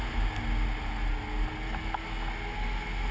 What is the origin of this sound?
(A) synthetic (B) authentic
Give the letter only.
B